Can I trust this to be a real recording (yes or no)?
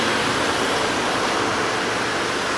yes